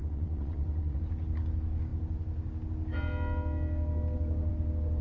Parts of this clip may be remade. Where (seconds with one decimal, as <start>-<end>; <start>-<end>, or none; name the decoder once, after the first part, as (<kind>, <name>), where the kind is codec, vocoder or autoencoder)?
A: 0.0-1.0 (vocoder, WaveNeXt)